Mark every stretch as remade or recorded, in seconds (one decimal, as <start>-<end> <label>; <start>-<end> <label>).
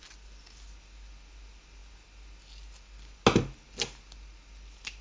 0.0-5.0 recorded